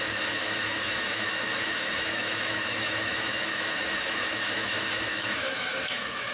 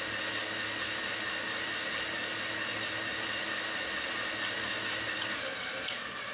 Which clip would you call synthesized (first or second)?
first